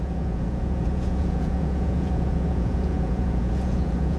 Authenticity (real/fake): fake